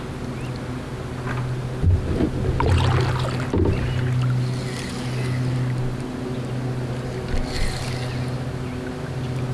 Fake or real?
real